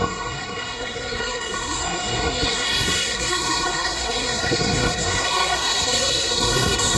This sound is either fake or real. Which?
fake